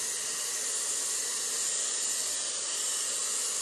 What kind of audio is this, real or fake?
real